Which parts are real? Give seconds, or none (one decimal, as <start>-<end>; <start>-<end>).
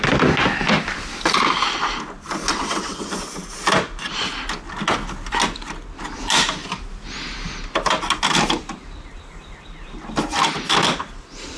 0.0-2.5; 3.1-11.6